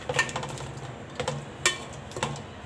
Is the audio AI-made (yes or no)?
no